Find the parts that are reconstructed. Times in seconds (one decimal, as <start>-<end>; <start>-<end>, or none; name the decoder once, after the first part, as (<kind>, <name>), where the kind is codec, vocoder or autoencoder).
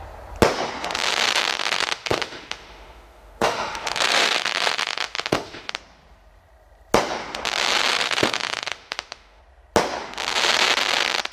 1.6-5.7 (autoencoder, DAC-VAE); 7.9-9.4